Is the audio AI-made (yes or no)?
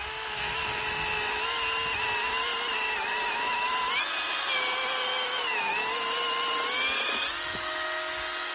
no